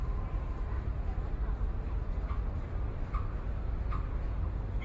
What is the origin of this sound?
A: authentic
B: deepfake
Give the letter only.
A